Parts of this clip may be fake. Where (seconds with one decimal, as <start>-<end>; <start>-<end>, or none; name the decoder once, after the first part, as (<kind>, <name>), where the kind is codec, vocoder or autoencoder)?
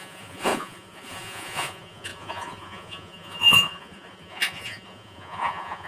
0.0-5.9 (vocoder, Vocos)